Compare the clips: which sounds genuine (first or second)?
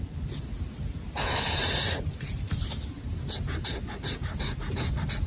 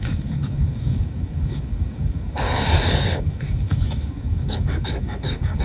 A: first